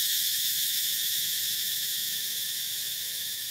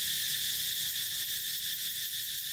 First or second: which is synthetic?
first